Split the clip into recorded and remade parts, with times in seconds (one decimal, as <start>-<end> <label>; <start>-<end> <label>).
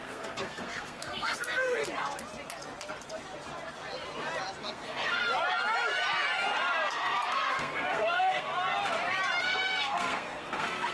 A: 0.0-1.8 remade; 1.8-4.6 recorded; 4.6-5.2 remade; 5.2-6.9 recorded; 6.9-8.5 remade; 8.5-9.4 recorded; 9.4-10.9 remade